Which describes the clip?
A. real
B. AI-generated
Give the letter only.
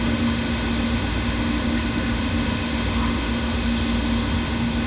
B